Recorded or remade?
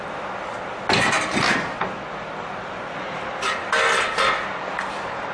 recorded